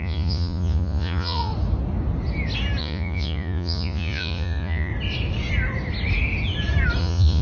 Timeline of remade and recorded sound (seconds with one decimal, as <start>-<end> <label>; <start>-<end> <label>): 0.0-1.5 remade; 1.5-2.8 recorded; 2.8-4.9 remade; 4.9-7.0 recorded; 7.0-7.4 remade

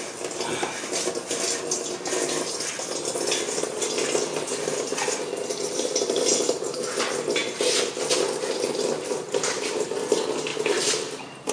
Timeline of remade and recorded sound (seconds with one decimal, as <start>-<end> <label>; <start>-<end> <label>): 0.0-11.5 recorded